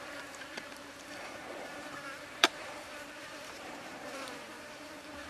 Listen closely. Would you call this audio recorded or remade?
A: remade